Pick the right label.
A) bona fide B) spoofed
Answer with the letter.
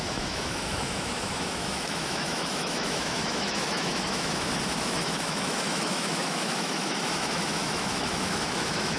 B